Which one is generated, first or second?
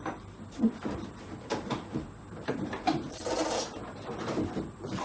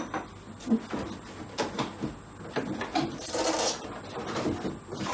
first